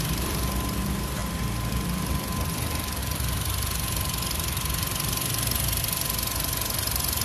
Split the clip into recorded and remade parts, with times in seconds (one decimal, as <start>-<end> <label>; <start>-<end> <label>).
0.0-1.2 remade; 1.2-1.7 recorded; 1.7-7.2 remade